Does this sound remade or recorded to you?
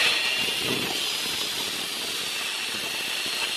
recorded